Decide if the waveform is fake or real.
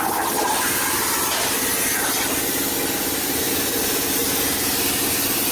real